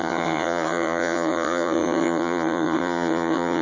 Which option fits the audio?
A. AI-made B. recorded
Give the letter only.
A